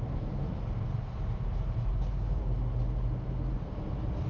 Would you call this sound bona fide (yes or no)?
yes